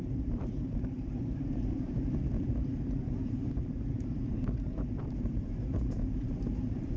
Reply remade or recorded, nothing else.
remade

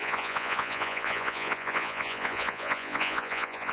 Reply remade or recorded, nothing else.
remade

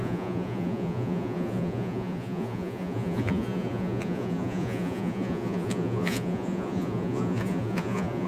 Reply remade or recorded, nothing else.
remade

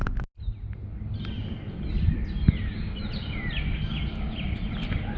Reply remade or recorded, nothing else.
recorded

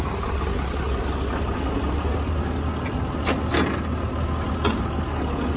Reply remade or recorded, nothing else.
recorded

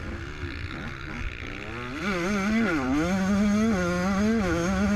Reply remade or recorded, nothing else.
recorded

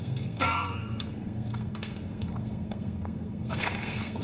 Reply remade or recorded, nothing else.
remade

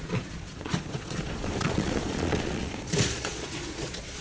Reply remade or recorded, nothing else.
remade